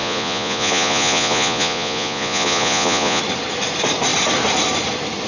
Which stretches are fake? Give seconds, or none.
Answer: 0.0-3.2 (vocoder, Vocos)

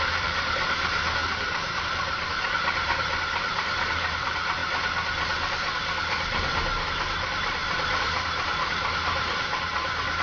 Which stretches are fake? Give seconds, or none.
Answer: 0.0-4.6 (vocoder, BigVGAN v2); 6.8-10.2

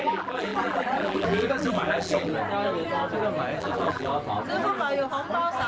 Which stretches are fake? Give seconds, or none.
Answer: 0.0-2.3 (vocoder, BigVGAN v2); 3.6-4.1